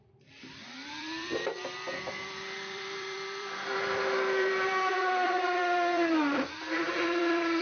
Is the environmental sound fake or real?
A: fake